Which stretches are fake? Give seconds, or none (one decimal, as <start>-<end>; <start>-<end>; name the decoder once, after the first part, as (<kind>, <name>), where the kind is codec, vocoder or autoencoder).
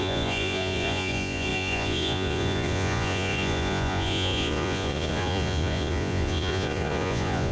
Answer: 0.0-7.5 (vocoder, Vocos)